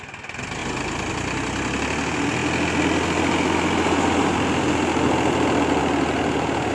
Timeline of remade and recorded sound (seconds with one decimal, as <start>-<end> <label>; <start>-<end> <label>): 0.0-6.7 recorded